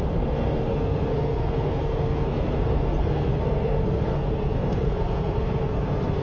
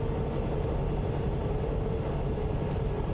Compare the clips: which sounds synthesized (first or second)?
first